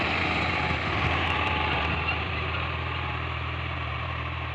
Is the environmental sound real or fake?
fake